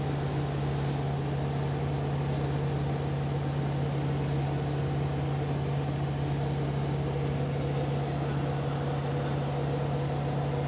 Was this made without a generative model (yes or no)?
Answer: yes